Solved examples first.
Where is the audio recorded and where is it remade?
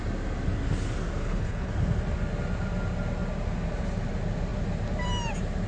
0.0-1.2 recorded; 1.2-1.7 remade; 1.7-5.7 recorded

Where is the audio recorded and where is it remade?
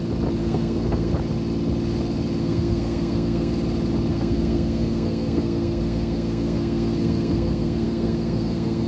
0.0-0.4 recorded; 0.4-1.1 remade; 1.1-2.4 recorded; 2.4-3.5 remade; 3.5-4.1 recorded; 4.1-8.9 remade